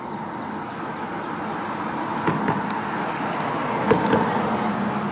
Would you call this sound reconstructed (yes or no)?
no